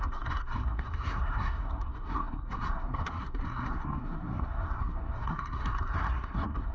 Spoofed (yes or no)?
yes